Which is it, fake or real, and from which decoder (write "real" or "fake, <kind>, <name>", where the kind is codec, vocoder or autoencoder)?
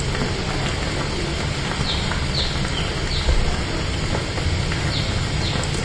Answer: real